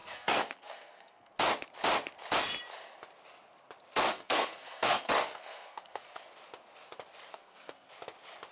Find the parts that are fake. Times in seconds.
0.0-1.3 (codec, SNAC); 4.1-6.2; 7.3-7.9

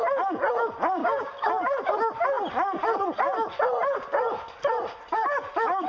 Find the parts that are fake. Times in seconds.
1.0-1.5 (codec, DAC)